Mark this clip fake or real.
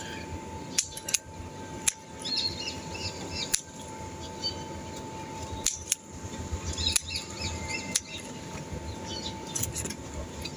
real